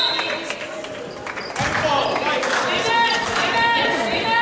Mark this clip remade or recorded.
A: recorded